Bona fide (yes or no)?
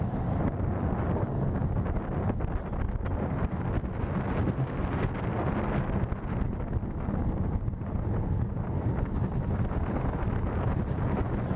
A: yes